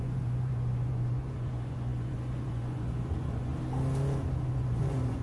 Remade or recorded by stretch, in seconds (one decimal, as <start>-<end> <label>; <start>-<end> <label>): 0.0-3.5 remade; 3.5-4.5 recorded; 4.5-5.2 remade